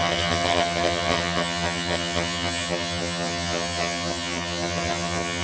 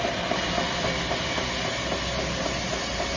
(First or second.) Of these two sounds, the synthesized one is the first